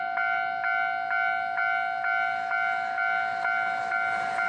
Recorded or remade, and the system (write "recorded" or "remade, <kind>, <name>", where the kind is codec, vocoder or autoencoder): recorded